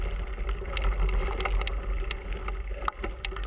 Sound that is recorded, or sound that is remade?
recorded